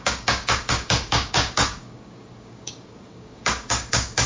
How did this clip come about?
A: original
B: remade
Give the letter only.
B